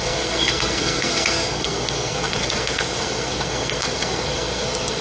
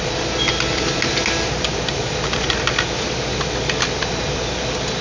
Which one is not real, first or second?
first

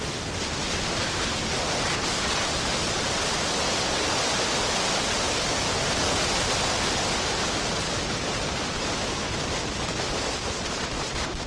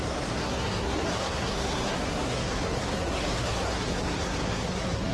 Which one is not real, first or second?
second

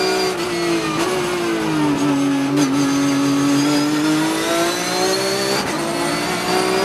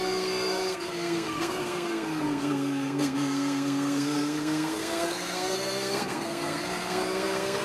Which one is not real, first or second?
second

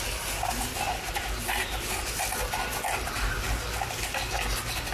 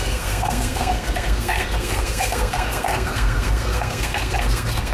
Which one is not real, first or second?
second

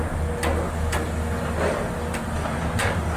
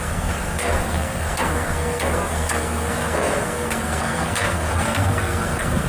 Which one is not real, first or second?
second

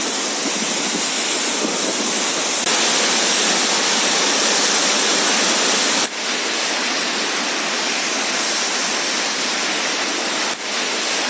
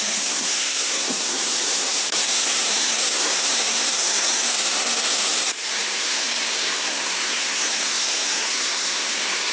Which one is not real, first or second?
second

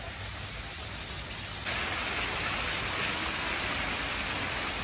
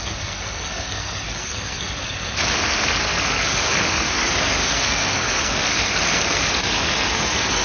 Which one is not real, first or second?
second